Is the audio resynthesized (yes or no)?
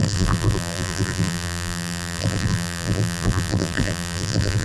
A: yes